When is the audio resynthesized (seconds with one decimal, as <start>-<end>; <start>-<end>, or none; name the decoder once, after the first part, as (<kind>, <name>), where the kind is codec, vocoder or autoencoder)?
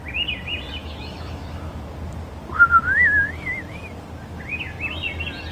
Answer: 0.8-1.9 (autoencoder, DAC-VAE)